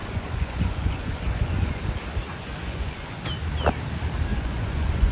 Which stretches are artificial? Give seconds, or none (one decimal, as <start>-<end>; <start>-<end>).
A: 0.0-1.8; 2.3-3.2; 4.3-5.1

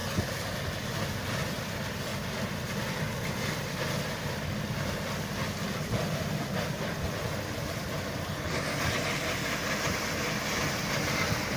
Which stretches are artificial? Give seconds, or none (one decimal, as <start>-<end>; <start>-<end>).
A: 1.2-2.1; 2.7-11.6

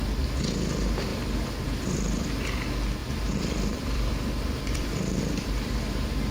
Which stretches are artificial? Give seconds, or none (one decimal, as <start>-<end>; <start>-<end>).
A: 1.1-2.0; 3.0-6.3

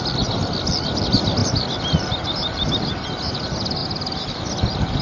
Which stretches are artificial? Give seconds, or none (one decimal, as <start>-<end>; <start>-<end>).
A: none